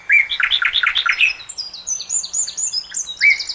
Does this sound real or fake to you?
real